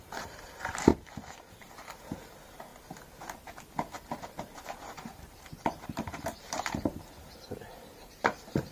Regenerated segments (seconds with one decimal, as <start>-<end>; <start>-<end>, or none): 0.0-0.9; 1.5-2.7; 4.2-8.7